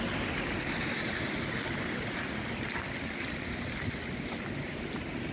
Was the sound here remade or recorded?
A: recorded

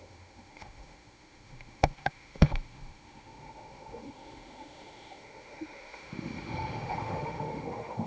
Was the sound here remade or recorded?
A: remade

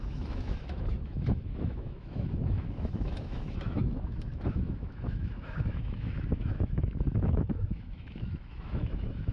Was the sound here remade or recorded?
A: remade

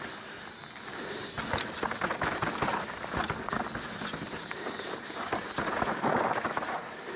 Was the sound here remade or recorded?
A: recorded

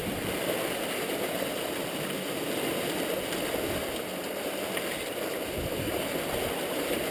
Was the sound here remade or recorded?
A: recorded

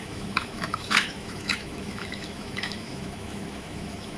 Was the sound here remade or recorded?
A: remade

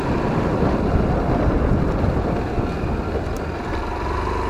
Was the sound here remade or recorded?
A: recorded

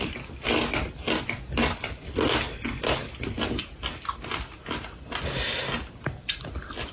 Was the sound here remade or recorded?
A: recorded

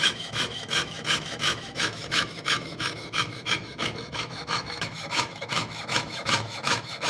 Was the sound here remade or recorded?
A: remade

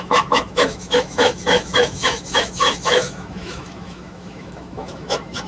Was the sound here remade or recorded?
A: remade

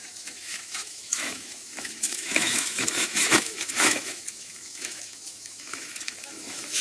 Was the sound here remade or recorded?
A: remade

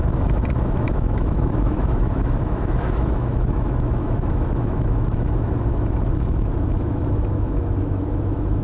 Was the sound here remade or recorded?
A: remade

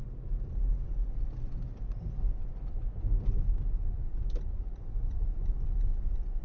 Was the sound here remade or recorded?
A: recorded